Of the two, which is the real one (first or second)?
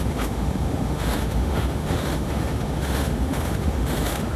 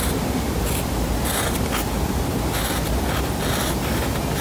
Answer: second